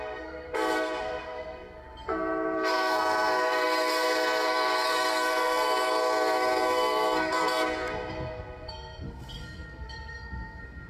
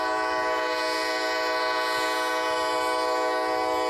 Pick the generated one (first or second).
first